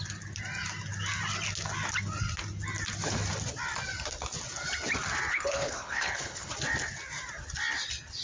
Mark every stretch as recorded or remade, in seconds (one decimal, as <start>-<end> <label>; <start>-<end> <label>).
0.0-5.3 recorded; 5.3-6.5 remade; 6.5-8.2 recorded